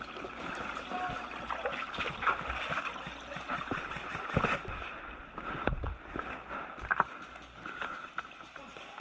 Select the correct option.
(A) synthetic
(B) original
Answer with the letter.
B